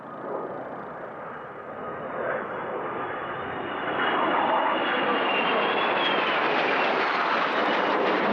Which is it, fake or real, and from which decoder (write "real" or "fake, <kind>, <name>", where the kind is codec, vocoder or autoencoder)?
real